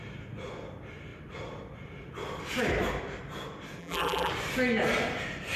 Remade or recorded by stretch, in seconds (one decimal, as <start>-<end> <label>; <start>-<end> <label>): 0.0-3.8 recorded; 3.8-4.3 remade; 4.3-5.6 recorded